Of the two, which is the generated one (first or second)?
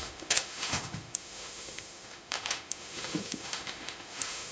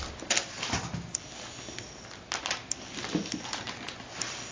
first